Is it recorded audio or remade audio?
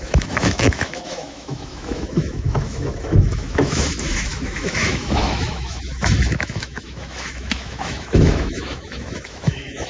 remade